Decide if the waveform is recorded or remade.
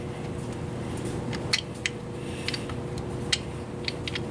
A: recorded